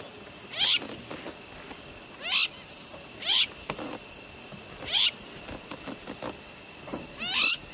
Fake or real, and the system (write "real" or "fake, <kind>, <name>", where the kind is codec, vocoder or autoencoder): real